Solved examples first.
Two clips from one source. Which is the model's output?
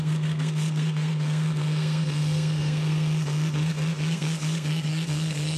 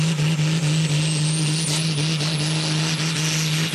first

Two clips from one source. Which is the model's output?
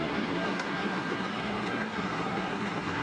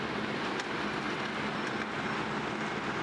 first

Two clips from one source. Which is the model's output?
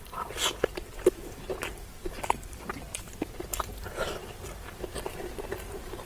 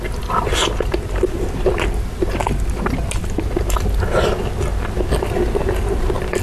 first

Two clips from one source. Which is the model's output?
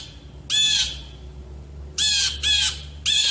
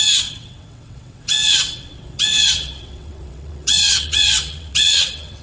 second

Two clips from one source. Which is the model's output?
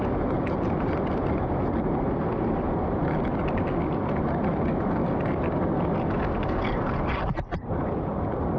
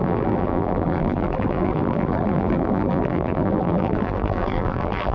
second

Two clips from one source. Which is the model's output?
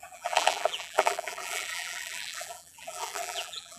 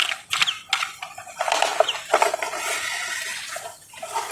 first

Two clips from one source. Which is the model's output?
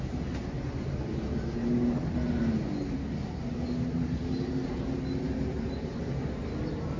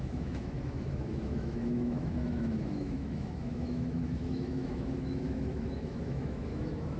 second